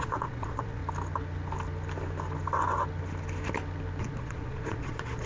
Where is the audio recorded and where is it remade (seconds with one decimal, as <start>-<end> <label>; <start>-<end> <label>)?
0.0-0.8 remade; 0.8-4.0 recorded; 4.0-5.3 remade